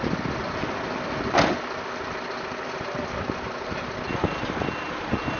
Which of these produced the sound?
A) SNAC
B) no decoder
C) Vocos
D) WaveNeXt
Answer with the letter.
B